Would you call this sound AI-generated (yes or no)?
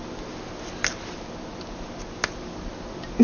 no